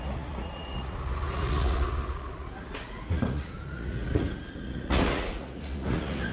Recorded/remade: remade